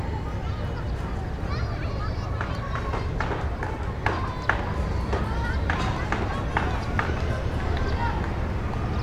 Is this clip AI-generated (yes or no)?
no